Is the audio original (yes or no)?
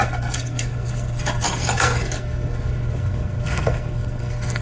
no